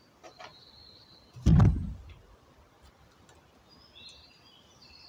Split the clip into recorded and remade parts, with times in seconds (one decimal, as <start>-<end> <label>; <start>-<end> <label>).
0.0-5.1 recorded